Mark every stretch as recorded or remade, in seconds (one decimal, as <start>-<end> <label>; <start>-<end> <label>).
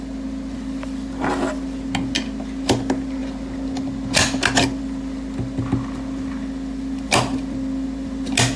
0.0-8.6 recorded